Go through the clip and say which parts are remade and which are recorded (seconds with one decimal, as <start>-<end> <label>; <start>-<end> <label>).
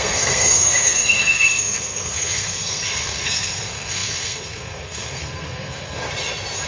0.0-6.0 remade; 6.0-6.7 recorded